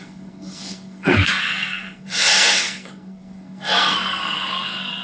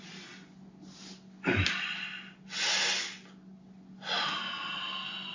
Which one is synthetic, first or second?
first